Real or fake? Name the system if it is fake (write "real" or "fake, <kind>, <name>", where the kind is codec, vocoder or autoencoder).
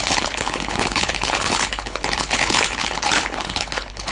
fake, codec, HILCodec